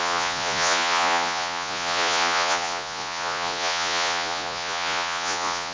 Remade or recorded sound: remade